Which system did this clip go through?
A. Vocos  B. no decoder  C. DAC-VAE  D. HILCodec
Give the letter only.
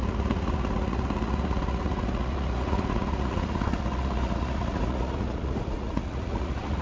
A